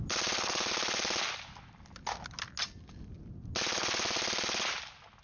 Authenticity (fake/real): real